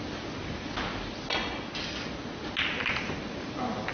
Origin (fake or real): real